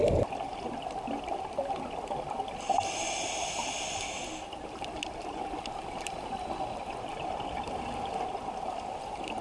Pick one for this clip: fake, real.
real